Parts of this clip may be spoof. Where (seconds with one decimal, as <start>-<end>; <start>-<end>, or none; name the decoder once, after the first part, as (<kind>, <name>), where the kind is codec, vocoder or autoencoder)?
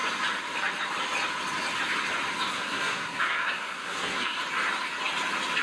2.5-4.4 (codec, SNAC)